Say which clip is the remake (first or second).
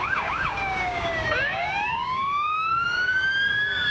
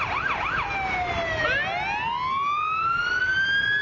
first